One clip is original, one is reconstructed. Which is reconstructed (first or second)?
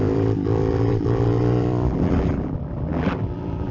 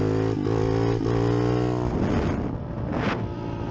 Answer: first